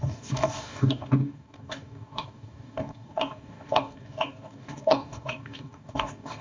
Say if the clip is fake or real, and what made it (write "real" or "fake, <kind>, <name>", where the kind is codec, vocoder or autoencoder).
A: fake, codec, DAC